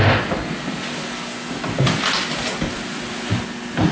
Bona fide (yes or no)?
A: yes